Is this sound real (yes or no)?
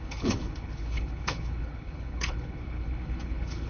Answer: no